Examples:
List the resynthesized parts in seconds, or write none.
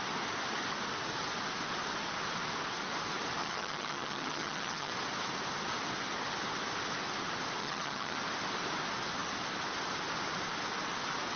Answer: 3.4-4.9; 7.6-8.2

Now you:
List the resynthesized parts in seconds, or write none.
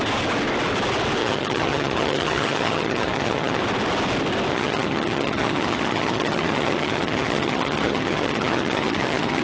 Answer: 1.2-3.6; 4.5-9.4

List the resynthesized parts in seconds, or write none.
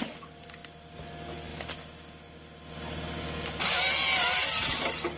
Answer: none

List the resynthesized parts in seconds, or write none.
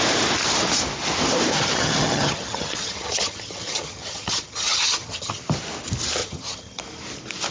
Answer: 1.5-5.3; 6.2-6.8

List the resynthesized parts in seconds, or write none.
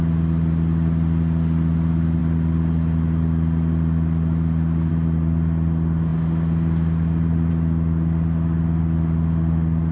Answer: none